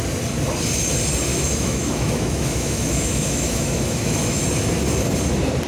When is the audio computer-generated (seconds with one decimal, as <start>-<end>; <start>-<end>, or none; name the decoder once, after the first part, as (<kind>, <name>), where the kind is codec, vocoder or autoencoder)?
1.3-4.4 (autoencoder, DAC-VAE)